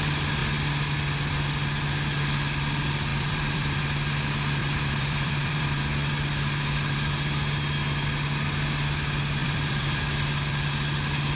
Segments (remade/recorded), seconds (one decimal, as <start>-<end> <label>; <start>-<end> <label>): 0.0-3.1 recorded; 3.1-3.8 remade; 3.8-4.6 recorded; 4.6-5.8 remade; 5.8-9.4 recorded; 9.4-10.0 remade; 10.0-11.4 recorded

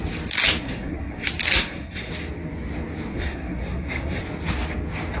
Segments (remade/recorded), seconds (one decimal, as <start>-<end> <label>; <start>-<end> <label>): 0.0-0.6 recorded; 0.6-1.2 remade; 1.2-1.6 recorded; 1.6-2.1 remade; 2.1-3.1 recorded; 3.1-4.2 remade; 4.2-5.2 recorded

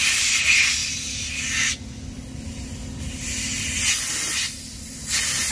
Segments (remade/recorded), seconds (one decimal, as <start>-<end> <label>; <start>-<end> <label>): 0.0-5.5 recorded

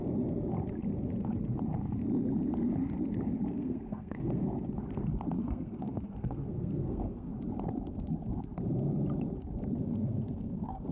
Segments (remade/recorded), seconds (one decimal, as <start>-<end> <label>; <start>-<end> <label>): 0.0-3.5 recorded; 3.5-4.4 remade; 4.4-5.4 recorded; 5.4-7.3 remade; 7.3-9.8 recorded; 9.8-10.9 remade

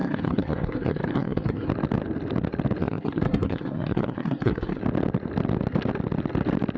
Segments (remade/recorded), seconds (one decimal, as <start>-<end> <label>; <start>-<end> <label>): 0.0-1.7 remade; 1.7-2.8 recorded; 2.8-4.8 remade; 4.8-6.8 recorded